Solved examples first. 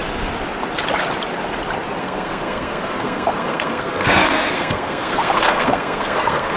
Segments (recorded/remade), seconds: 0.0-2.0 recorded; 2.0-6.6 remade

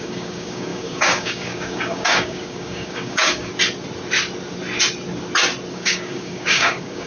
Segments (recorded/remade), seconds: 0.0-3.5 remade; 3.5-5.7 recorded; 5.7-7.1 remade